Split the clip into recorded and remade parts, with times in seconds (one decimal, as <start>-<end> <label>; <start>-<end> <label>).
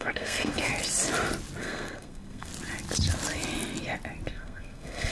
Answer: 0.0-0.7 remade; 0.7-1.6 recorded; 1.6-2.5 remade; 2.5-4.3 recorded; 4.3-5.1 remade